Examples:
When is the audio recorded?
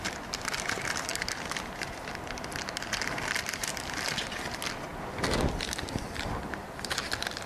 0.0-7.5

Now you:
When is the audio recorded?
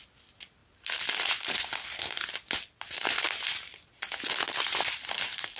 0.0-5.6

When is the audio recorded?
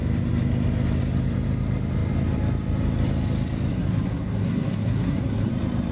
0.0-3.7; 5.5-5.9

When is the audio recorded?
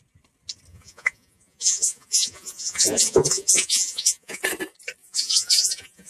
0.0-0.7; 4.4-5.0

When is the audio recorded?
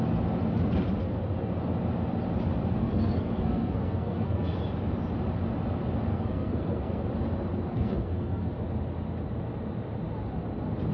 0.0-2.8; 4.6-6.1; 7.0-7.7; 8.5-10.9